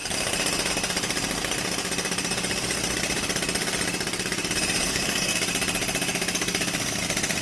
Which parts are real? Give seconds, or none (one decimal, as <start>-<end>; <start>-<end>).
0.0-4.8; 5.4-7.4